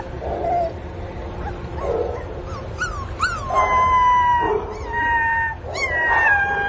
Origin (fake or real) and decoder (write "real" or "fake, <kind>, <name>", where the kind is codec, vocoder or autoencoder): real